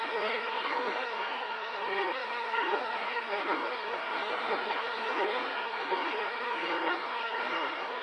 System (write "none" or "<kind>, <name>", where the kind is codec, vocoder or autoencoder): codec, SNAC